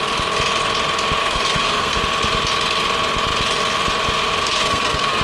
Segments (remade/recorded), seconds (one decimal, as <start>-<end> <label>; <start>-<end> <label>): 0.0-1.2 recorded; 1.2-2.0 remade; 2.0-4.4 recorded; 4.4-5.2 remade